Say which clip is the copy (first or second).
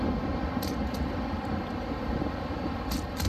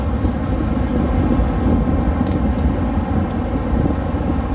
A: first